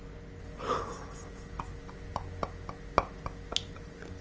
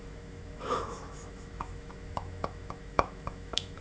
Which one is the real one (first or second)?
first